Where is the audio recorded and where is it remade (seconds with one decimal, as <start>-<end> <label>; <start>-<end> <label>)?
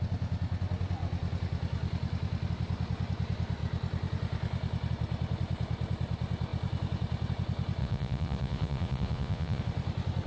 0.0-7.8 recorded; 7.8-9.6 remade; 9.6-10.3 recorded